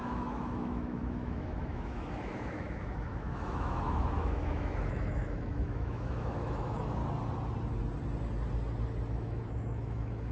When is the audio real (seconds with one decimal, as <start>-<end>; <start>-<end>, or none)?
7.0-9.1